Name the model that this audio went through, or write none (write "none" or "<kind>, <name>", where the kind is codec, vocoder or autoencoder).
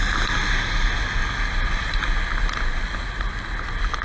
none